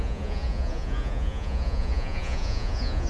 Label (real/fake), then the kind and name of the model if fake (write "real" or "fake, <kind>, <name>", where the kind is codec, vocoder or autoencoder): fake, vocoder, Vocos